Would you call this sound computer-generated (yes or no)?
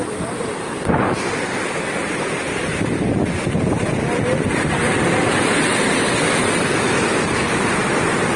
yes